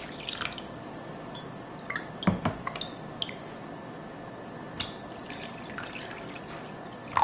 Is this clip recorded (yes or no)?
yes